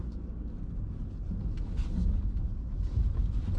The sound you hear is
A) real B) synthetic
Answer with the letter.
A